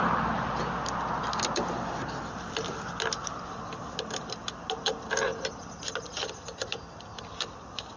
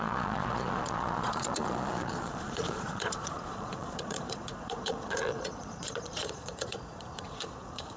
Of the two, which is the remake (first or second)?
second